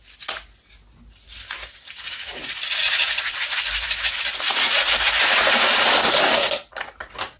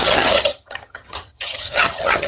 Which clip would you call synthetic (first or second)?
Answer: second